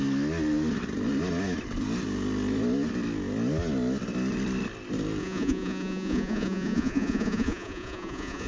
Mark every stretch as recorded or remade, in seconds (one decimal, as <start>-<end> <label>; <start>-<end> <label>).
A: 0.0-5.2 recorded; 5.2-8.5 remade